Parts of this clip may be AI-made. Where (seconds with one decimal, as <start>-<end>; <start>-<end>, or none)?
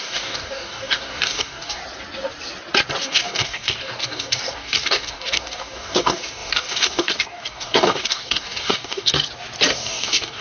0.0-1.8; 3.0-9.1; 9.7-10.4